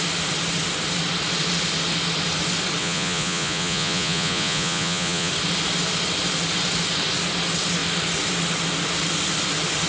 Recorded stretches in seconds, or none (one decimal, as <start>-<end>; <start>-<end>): 0.0-2.8; 5.3-9.9